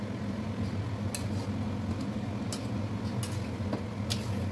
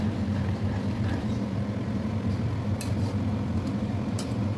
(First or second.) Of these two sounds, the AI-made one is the second